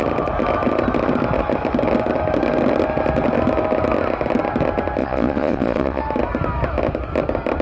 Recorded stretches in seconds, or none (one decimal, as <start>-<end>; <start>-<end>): 0.0-5.0; 6.0-7.6